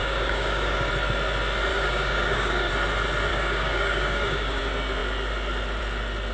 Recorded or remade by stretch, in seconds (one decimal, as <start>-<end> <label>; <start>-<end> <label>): 0.0-0.9 remade; 0.9-1.7 recorded; 1.7-2.7 remade; 2.7-3.3 recorded; 3.3-4.6 remade; 4.6-6.3 recorded